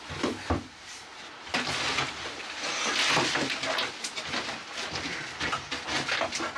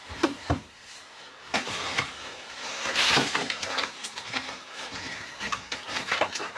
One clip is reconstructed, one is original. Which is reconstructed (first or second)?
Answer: second